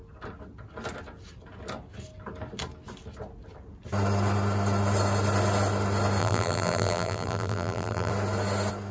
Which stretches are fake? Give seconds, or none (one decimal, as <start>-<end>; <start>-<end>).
6.2-8.1